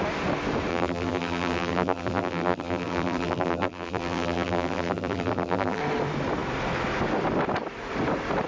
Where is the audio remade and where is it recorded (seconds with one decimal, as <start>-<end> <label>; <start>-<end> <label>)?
0.0-0.7 recorded; 0.7-5.8 remade; 5.8-8.5 recorded